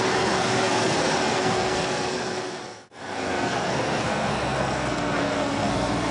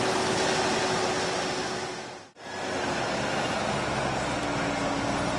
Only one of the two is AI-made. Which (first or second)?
first